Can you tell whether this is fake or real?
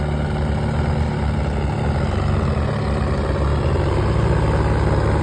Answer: real